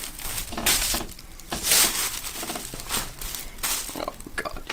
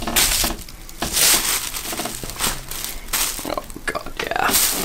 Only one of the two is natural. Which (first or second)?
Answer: second